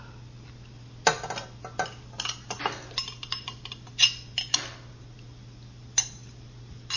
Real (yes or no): yes